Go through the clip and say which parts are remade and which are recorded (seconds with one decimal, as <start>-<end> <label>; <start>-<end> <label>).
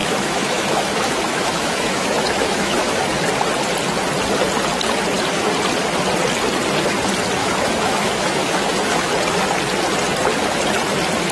0.0-3.0 remade; 3.0-7.4 recorded; 7.4-9.1 remade; 9.1-11.3 recorded